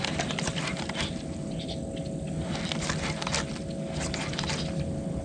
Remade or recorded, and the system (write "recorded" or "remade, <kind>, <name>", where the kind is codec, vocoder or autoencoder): recorded